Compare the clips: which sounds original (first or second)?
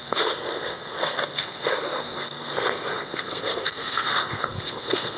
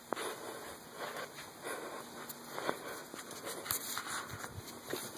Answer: second